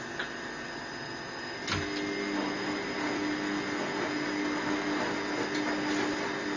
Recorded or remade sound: recorded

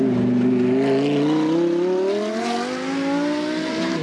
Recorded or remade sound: recorded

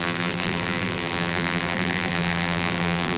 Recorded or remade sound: remade